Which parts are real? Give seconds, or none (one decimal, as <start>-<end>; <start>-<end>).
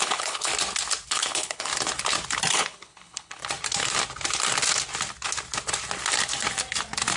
0.5-1.1; 1.7-2.5; 3.4-7.2